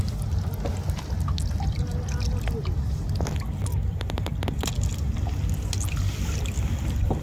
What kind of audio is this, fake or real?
real